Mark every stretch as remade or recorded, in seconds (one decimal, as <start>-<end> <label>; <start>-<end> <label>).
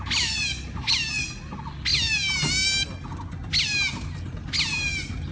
0.0-5.3 recorded